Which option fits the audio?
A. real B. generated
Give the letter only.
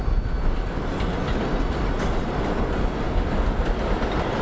A